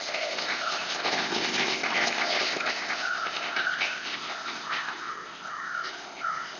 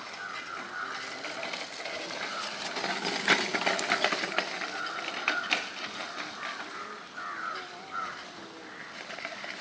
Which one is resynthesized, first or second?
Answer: first